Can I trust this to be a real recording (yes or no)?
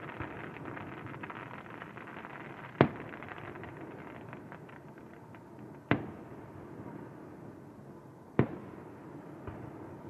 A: yes